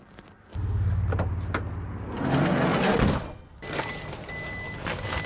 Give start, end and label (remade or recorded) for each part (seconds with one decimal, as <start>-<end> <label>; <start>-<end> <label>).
0.0-5.3 recorded